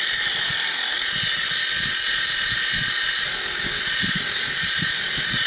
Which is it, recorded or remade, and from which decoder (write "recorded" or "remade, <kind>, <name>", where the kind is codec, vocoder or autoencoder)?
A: recorded